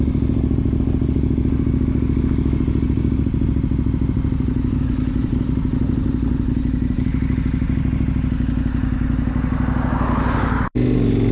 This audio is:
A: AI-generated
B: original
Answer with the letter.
B